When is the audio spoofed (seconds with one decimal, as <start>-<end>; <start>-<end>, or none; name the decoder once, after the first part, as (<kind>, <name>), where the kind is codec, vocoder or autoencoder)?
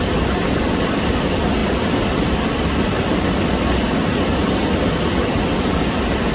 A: none